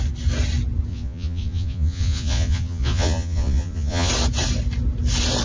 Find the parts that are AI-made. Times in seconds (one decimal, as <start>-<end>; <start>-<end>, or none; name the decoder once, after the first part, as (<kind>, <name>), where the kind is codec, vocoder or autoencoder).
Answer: 0.9-4.1 (vocoder, Vocos)